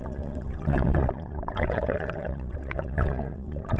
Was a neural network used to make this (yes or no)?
yes